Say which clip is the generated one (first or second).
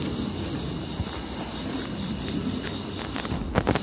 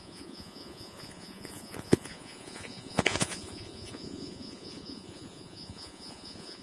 second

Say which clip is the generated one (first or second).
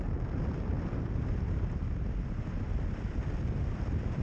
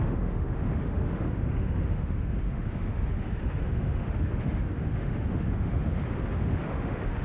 second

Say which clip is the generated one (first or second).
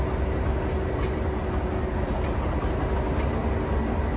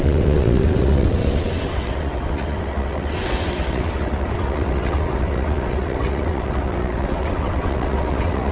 second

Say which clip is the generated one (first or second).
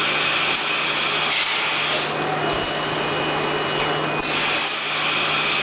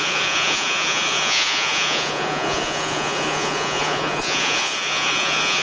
second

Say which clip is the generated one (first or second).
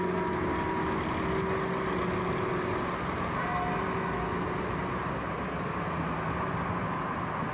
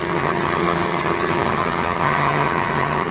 second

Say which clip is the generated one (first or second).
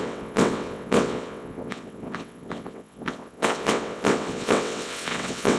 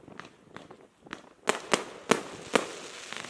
first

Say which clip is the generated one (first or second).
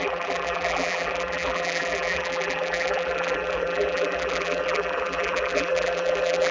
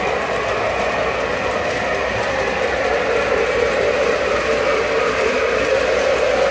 first